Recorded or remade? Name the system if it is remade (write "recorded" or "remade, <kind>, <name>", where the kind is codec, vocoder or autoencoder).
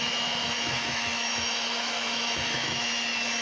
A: remade, autoencoder, DAC-VAE